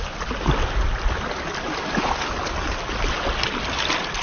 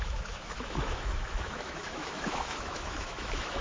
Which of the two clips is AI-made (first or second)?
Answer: second